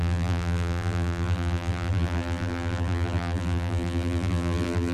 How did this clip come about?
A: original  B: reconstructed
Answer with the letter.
B